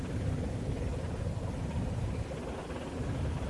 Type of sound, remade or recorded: recorded